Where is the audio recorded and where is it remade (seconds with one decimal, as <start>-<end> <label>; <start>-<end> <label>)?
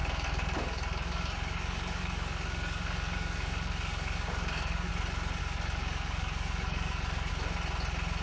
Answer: 0.0-4.9 remade; 4.9-5.4 recorded; 5.4-7.3 remade; 7.3-8.2 recorded